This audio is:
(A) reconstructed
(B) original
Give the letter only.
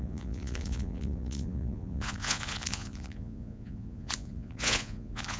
A